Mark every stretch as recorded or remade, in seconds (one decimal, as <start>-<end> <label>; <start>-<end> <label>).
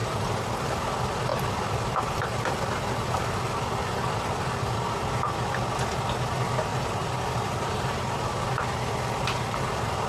0.0-0.5 remade; 0.5-6.7 recorded; 6.7-8.3 remade; 8.3-10.1 recorded